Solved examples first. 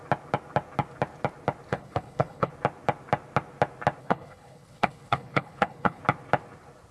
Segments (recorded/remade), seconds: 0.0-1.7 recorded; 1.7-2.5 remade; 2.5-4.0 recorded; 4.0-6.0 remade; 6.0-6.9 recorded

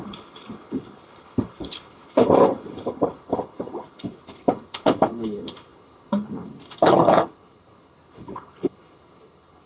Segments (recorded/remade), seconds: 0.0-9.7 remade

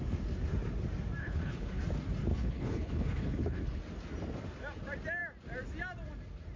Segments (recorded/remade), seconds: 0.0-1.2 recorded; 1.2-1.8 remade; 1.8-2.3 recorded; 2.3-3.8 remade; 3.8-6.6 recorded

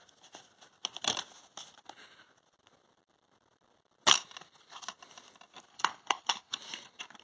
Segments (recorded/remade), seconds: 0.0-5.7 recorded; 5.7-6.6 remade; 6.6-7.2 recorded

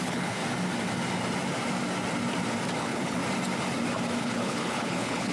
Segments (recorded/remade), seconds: 0.0-0.4 remade; 0.4-2.8 recorded; 2.8-3.2 remade; 3.2-4.2 recorded; 4.2-5.3 remade

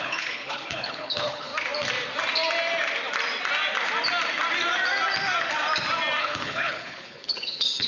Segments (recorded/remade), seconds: 0.0-1.5 remade; 1.5-6.2 recorded; 6.2-7.9 remade